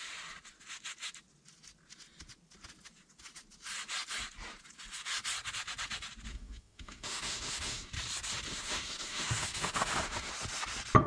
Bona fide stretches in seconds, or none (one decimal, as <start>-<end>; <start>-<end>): 0.0-6.3; 7.9-8.5; 10.3-11.1